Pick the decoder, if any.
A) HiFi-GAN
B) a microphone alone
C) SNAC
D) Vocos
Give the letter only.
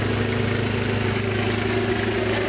B